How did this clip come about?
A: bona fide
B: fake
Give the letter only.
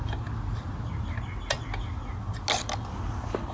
A